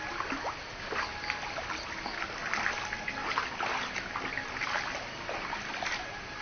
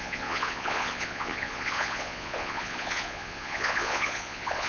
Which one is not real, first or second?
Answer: second